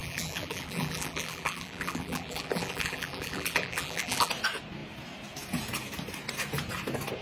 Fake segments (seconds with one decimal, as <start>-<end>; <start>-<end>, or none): 0.0-4.3